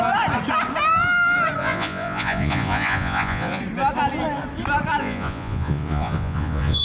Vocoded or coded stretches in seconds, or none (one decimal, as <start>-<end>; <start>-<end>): 1.6-3.6; 5.0-6.8